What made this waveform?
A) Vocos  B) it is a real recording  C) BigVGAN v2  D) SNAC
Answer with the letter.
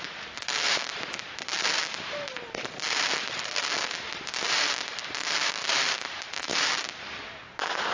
C